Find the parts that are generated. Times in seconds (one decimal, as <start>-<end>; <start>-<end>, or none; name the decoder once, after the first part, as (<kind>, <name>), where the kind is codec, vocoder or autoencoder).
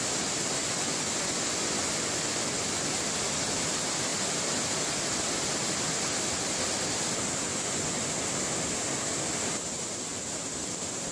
0.6-3.0 (vocoder, Vocos); 7.5-8.1